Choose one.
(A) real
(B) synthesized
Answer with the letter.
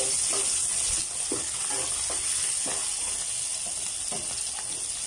A